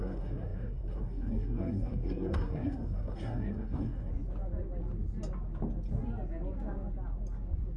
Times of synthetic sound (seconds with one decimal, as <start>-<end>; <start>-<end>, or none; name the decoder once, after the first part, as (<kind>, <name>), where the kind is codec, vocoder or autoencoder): 0.0-4.1 (codec, SNAC)